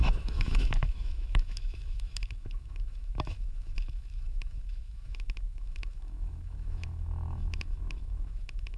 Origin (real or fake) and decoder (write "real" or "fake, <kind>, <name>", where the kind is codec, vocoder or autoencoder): fake, autoencoder, DAC-VAE